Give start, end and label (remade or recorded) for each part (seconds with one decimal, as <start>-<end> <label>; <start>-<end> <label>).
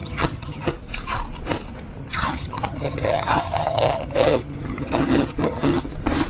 0.0-0.7 remade; 0.7-2.0 recorded; 2.0-5.8 remade; 5.8-6.3 recorded